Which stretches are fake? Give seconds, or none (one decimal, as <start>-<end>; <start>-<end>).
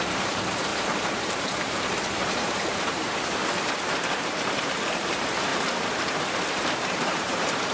0.0-3.4; 3.9-5.5; 6.5-7.7